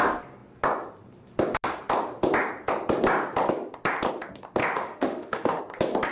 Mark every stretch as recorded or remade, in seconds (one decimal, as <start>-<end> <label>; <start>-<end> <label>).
0.0-4.6 recorded; 4.6-5.6 remade; 5.6-6.1 recorded